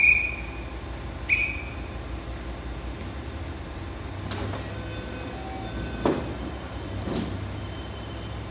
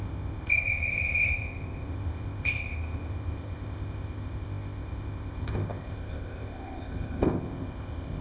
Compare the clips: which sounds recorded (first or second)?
first